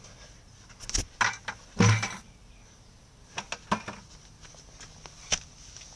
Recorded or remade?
recorded